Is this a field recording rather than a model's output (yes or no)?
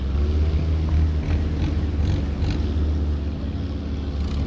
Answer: yes